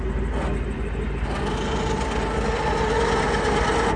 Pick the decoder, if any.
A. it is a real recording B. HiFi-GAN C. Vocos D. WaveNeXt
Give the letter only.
A